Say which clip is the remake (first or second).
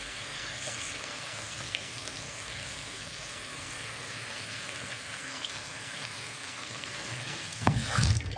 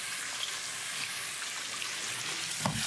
first